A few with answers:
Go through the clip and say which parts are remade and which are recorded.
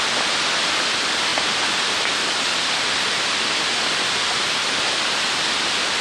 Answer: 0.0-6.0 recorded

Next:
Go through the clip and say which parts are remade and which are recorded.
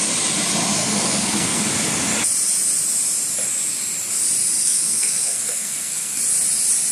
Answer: 0.0-0.8 recorded; 0.8-1.6 remade; 1.6-4.6 recorded; 4.6-6.2 remade; 6.2-6.9 recorded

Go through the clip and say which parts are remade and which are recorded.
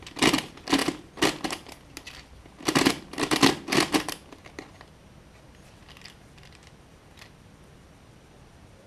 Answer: 0.0-8.9 recorded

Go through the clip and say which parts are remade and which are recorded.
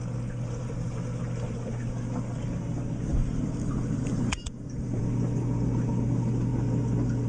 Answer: 0.0-3.1 recorded; 3.1-5.0 remade; 5.0-7.3 recorded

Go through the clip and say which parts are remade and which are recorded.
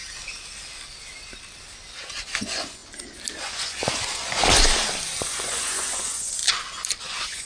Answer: 0.0-2.4 recorded; 2.4-2.8 remade; 2.8-3.4 recorded; 3.4-4.4 remade; 4.4-5.2 recorded; 5.2-6.4 remade; 6.4-7.0 recorded; 7.0-7.5 remade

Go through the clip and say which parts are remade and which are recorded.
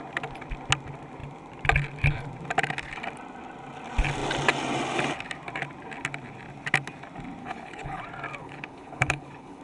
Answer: 0.0-7.4 recorded; 7.4-8.0 remade; 8.0-8.4 recorded; 8.4-9.6 remade